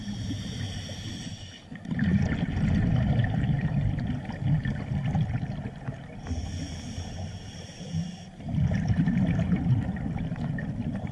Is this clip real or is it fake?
real